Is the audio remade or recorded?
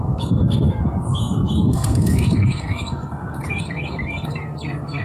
remade